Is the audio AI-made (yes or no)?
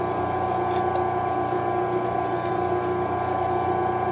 no